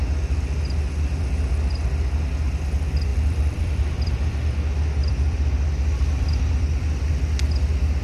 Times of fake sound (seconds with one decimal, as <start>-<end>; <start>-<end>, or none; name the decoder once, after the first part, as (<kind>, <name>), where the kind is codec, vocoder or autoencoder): 3.1-4.3 (vocoder, BigVGAN v2); 5.0-7.1